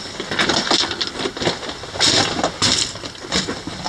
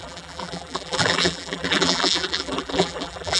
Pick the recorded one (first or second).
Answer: first